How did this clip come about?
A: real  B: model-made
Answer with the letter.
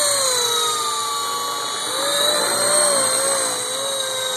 A